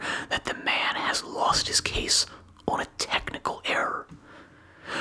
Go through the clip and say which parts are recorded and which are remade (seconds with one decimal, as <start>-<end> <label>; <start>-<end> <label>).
0.0-0.6 recorded; 0.6-1.5 remade; 1.5-5.0 recorded